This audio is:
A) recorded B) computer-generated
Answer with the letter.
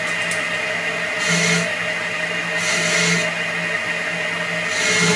A